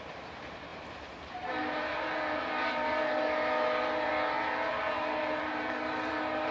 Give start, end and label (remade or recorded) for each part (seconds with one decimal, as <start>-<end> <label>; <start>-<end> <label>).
0.0-4.1 remade; 4.1-4.7 recorded; 4.7-6.5 remade